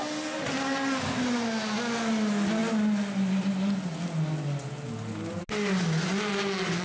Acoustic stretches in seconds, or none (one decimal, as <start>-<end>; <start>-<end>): 0.0-6.8